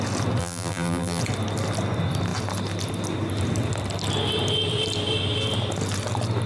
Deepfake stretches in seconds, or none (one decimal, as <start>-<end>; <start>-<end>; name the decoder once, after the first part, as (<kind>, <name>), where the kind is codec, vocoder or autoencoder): 0.4-1.2 (vocoder, BigVGAN v2)